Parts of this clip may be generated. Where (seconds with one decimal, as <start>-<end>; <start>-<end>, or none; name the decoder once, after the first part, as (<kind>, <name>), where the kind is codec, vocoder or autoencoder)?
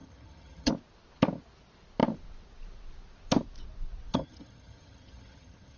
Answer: 0.0-0.7 (vocoder, HiFi-GAN); 4.1-5.8